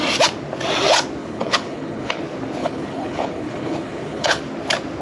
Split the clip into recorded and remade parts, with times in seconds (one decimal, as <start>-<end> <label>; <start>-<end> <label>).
0.0-1.2 recorded; 1.2-2.2 remade; 2.2-2.6 recorded; 2.6-4.4 remade; 4.4-5.0 recorded